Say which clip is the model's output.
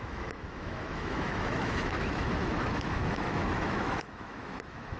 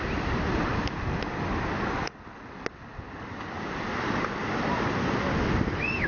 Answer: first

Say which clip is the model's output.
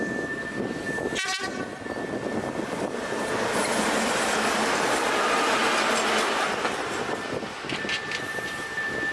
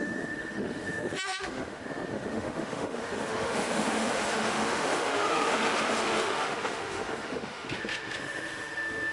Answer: second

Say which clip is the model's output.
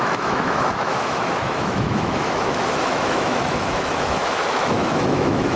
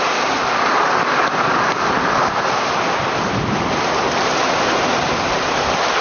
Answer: first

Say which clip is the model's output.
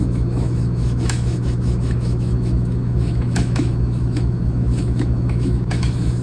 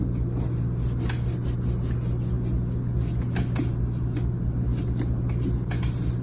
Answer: first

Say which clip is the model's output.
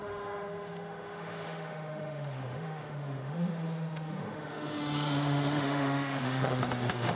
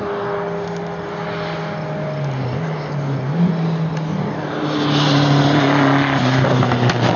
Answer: first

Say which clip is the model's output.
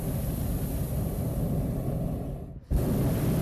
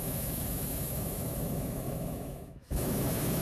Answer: second